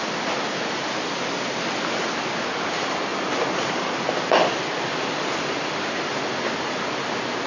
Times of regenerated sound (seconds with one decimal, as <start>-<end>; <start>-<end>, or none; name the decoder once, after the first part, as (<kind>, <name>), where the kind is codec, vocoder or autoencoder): none